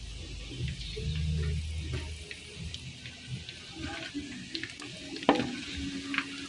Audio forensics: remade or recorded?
recorded